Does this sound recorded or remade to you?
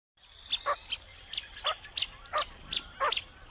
recorded